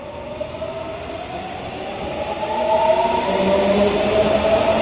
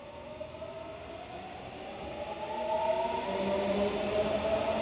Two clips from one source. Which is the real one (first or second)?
second